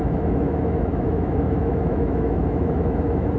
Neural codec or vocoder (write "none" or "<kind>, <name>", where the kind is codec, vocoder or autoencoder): autoencoder, DAC-VAE